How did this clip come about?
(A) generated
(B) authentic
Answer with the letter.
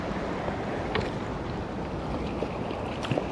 B